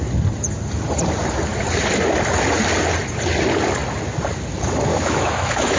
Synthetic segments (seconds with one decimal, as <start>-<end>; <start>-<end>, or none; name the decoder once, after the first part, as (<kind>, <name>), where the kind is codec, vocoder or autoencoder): 4.9-5.8 (autoencoder, DAC-VAE)